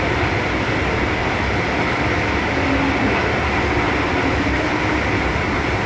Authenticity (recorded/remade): recorded